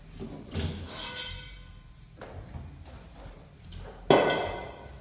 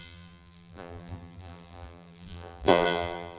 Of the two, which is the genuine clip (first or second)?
first